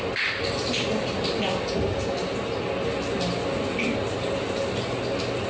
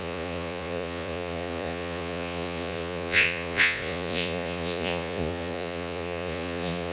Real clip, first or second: first